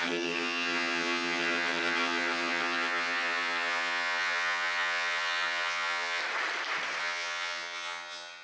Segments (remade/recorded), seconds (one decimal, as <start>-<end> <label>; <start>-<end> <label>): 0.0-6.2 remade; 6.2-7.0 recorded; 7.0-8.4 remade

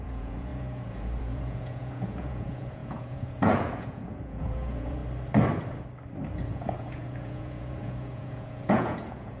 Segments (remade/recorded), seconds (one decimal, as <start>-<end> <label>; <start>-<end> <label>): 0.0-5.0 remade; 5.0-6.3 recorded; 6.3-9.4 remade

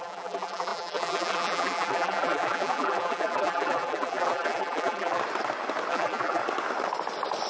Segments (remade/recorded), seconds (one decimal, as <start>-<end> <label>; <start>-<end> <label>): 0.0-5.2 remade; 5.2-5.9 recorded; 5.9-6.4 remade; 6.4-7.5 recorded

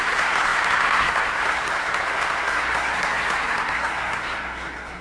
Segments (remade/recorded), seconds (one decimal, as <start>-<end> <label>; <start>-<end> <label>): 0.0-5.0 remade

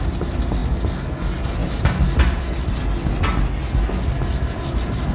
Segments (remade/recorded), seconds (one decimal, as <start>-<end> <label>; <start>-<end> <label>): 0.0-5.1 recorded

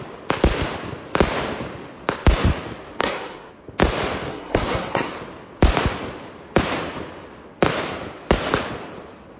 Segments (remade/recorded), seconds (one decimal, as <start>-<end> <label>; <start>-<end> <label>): 0.0-3.0 recorded; 3.0-3.5 remade; 3.5-4.3 recorded; 4.3-5.1 remade; 5.1-9.4 recorded